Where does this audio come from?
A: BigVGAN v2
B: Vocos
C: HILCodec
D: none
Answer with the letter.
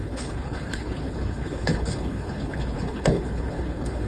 C